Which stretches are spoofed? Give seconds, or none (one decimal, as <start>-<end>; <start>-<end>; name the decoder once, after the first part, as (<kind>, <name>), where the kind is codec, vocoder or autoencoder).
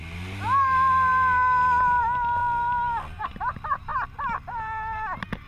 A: none